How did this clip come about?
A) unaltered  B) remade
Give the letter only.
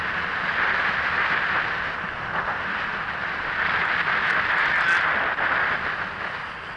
A